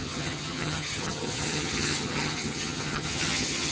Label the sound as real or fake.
fake